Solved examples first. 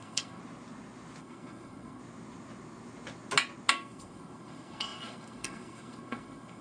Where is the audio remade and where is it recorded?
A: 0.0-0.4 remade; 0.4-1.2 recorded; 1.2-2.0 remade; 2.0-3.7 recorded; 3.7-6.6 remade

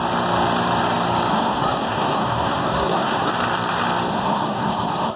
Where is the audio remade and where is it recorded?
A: 0.0-1.3 recorded; 1.3-3.3 remade; 3.3-4.1 recorded; 4.1-5.2 remade

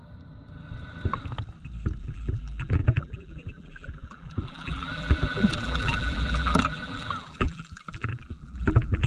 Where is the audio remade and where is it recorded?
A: 0.0-2.0 recorded; 2.0-9.1 remade

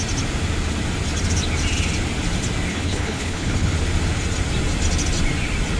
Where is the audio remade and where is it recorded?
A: 0.0-2.7 recorded; 2.7-3.7 remade; 3.7-5.8 recorded

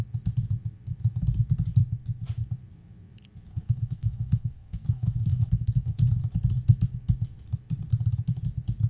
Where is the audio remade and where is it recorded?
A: 0.0-3.5 recorded; 3.5-6.0 remade; 6.0-8.9 recorded

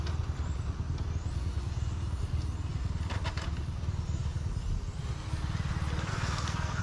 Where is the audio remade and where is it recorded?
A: 0.0-6.1 recorded; 6.1-6.8 remade

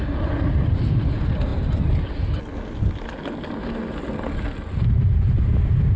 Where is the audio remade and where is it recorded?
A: 0.0-6.0 recorded

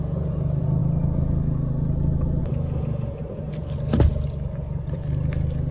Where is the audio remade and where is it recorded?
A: 0.0-0.8 remade; 0.8-2.4 recorded; 2.4-3.2 remade; 3.2-5.7 recorded